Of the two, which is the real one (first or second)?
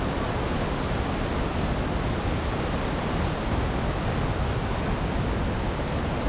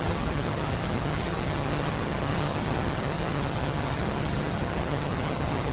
first